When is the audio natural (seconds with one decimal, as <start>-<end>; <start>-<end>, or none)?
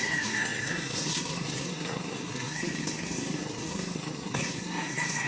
none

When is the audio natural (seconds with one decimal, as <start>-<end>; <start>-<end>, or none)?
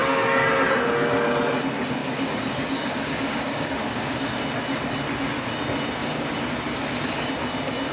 0.5-2.0; 4.3-6.0; 7.3-7.9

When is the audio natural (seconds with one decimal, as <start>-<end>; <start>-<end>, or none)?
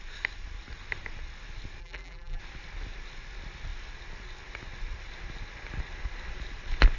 0.0-1.8; 2.4-7.0